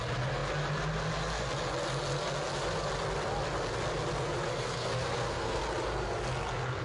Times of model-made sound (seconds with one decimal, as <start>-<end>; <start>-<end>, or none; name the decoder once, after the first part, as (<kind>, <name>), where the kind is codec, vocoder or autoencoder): 4.5-5.6 (codec, SNAC)